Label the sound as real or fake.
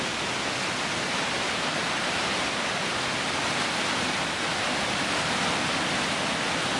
real